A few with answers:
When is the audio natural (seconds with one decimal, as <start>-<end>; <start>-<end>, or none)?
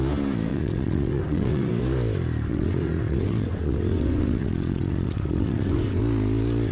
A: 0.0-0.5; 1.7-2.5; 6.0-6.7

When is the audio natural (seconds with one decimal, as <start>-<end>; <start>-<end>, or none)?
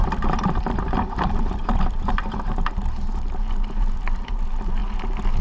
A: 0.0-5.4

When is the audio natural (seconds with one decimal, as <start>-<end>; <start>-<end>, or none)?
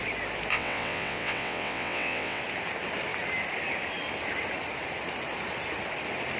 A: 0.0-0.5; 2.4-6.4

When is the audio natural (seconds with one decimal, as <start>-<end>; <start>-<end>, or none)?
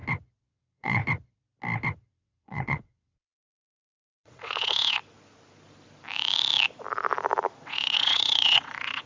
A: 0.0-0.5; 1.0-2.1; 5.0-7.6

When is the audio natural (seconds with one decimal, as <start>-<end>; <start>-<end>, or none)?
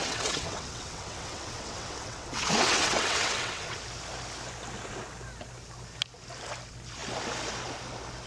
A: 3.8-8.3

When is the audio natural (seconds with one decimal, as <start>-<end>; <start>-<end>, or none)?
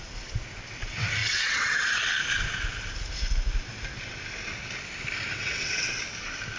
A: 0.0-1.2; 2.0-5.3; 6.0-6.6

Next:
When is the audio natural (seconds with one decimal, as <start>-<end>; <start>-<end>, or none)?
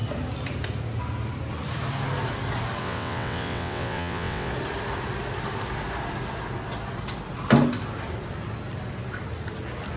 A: 0.0-2.8; 4.5-10.0